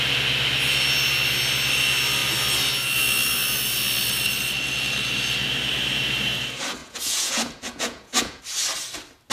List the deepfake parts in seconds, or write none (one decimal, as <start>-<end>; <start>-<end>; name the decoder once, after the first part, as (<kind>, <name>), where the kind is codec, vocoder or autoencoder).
6.8-8.4 (vocoder, Vocos)